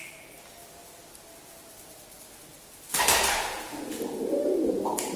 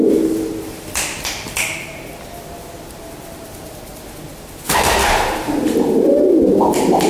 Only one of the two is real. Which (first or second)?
first